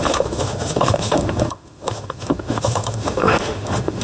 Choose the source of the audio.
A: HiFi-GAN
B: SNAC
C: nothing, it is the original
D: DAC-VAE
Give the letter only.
D